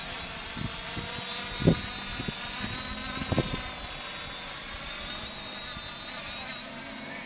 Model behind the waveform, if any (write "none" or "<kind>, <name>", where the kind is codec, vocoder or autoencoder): none